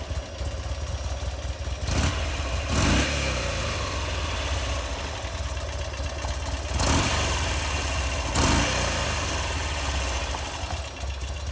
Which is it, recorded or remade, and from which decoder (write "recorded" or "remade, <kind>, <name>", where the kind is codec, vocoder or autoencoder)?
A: recorded